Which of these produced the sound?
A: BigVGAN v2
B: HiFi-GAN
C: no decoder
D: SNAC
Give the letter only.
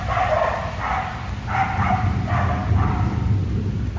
C